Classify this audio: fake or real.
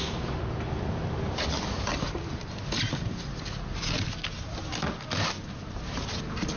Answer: real